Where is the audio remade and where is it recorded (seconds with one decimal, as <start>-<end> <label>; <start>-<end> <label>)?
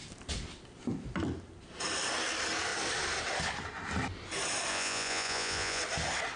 0.0-4.7 recorded; 4.7-5.8 remade; 5.8-6.4 recorded